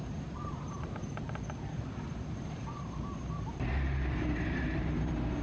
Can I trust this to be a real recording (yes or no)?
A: no